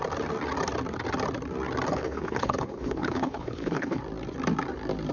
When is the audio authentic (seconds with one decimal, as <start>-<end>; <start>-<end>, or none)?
0.0-1.9; 4.0-5.1